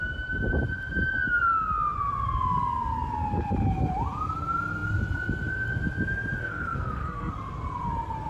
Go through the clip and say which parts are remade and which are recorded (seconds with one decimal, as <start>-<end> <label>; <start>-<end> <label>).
0.0-6.4 recorded; 6.4-7.3 remade; 7.3-8.3 recorded